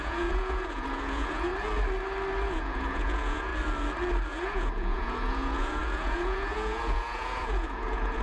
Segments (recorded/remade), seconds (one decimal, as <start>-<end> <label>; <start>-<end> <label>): 0.0-1.5 remade; 1.5-2.5 recorded; 2.5-3.5 remade; 3.5-4.3 recorded; 4.3-8.2 remade